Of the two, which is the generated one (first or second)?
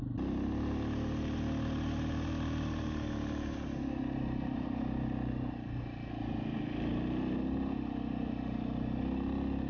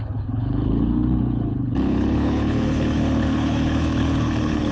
second